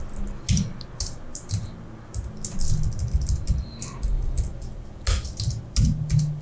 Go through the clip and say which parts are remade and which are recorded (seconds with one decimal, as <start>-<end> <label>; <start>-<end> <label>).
0.0-6.4 recorded